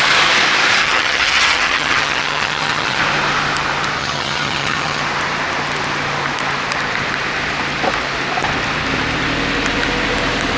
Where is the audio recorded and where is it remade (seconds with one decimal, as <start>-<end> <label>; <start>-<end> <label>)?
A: 0.0-0.8 recorded; 0.8-3.0 remade; 3.0-4.0 recorded; 4.0-5.0 remade; 5.0-10.6 recorded